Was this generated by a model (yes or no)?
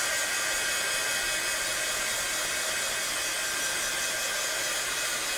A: no